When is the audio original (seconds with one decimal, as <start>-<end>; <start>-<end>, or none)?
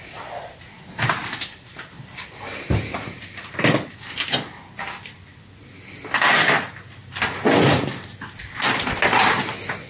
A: 0.0-9.9